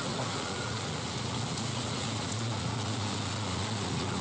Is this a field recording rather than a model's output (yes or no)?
no